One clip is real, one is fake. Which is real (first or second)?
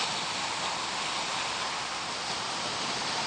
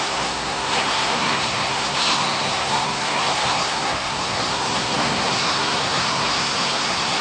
first